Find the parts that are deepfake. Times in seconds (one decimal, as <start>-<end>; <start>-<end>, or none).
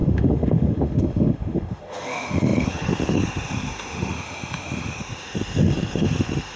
0.0-6.6